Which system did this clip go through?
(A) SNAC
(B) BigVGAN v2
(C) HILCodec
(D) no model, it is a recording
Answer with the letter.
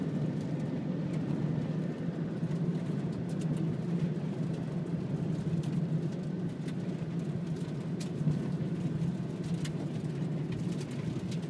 D